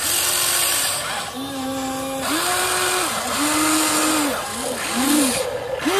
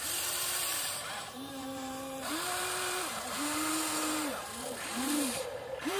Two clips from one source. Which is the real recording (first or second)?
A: first